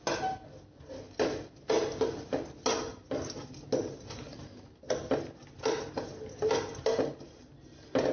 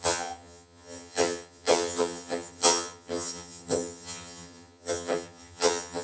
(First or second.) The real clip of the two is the first